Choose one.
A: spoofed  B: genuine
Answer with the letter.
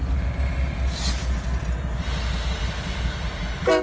B